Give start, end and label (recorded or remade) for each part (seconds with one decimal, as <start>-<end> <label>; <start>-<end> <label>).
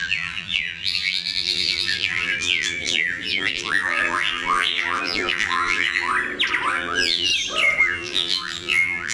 0.0-6.1 remade; 6.1-6.7 recorded; 6.7-7.3 remade; 7.3-7.8 recorded; 7.8-9.1 remade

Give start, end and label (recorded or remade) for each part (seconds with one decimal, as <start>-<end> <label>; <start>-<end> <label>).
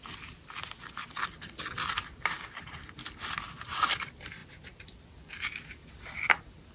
0.0-6.7 recorded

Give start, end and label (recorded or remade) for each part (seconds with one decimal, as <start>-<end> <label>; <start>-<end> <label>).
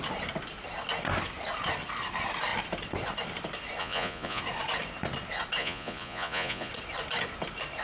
0.0-3.8 recorded; 3.8-4.4 remade; 4.4-5.6 recorded; 5.6-6.7 remade; 6.7-7.8 recorded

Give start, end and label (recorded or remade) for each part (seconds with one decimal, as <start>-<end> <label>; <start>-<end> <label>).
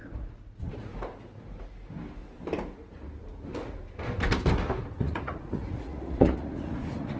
0.0-0.9 remade; 0.9-4.9 recorded; 4.9-7.2 remade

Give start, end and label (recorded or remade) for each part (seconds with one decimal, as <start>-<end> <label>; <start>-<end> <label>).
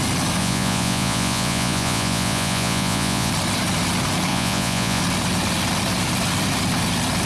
0.0-0.4 recorded; 0.4-3.3 remade; 3.3-4.3 recorded; 4.3-5.0 remade; 5.0-7.3 recorded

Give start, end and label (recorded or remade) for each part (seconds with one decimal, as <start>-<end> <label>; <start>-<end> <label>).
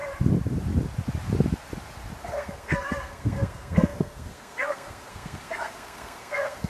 0.0-2.2 recorded; 2.2-6.7 remade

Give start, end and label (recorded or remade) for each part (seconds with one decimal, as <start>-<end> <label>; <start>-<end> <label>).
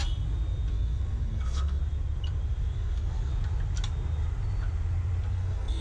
0.0-0.7 recorded; 0.7-1.8 remade; 1.8-2.7 recorded; 2.7-3.3 remade; 3.3-5.3 recorded; 5.3-5.8 remade